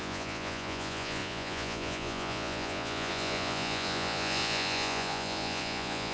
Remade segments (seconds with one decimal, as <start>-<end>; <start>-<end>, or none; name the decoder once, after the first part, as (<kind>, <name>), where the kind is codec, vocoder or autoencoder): 0.0-6.1 (vocoder, Vocos)